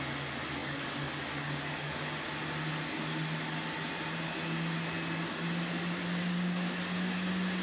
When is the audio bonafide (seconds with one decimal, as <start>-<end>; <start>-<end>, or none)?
0.0-0.6; 2.0-7.6